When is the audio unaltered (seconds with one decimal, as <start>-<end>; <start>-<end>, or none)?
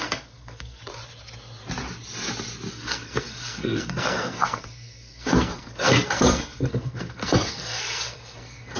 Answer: 0.8-2.7